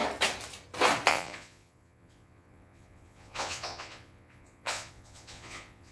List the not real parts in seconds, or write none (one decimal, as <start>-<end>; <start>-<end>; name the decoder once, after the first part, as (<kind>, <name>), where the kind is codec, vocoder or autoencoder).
1.1-5.9 (vocoder, Vocos)